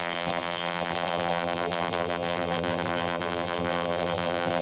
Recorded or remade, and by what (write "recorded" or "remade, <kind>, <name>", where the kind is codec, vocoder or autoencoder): remade, vocoder, BigVGAN v2